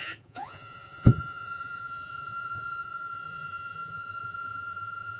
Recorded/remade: remade